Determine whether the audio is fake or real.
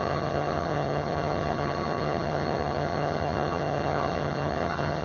fake